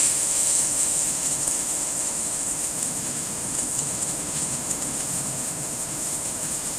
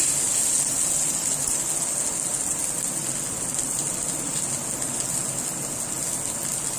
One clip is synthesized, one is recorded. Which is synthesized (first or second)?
first